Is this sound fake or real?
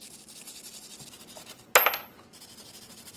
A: real